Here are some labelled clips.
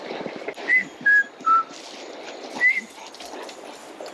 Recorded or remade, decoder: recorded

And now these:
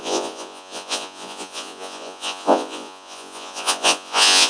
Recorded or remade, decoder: remade, vocoder, Vocos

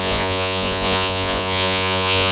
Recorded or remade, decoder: remade, vocoder, Vocos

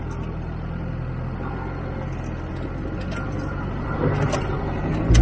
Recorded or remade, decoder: recorded